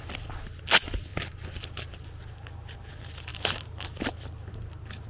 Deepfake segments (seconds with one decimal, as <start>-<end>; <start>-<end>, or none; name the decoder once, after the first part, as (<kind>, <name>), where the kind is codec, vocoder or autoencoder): none